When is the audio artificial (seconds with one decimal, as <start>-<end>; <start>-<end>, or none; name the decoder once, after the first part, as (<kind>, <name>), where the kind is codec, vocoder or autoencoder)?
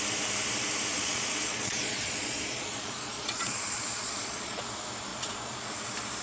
0.9-4.6 (vocoder, Vocos); 5.1-5.7